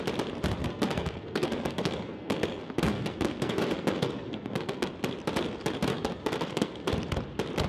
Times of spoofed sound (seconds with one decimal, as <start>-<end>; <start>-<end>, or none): 0.6-4.9; 5.9-6.9